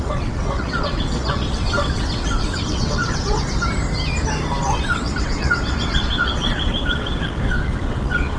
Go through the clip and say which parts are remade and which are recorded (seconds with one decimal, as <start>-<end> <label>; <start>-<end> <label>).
0.0-3.4 remade; 3.4-4.6 recorded; 4.6-8.4 remade